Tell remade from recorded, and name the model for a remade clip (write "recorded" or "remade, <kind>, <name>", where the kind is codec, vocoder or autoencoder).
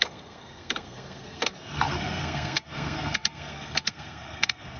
remade, codec, SNAC